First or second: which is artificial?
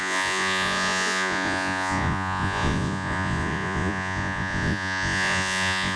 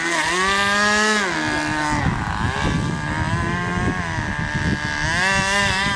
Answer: first